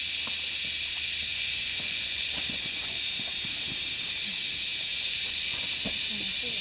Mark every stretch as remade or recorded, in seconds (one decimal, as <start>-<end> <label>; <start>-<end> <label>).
0.0-1.3 recorded; 1.3-3.0 remade; 3.0-4.9 recorded; 4.9-5.7 remade; 5.7-6.6 recorded